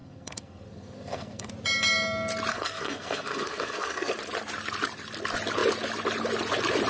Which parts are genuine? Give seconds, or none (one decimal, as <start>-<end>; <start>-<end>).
1.5-2.5; 4.1-6.9